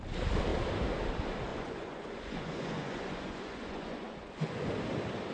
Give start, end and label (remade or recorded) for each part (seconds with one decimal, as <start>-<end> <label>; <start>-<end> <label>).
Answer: 0.0-1.5 recorded; 1.5-4.7 remade; 4.7-5.3 recorded